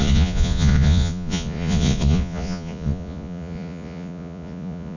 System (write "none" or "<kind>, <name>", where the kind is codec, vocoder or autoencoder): vocoder, Vocos